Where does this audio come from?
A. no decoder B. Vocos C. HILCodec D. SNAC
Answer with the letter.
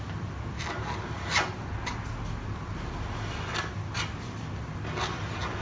A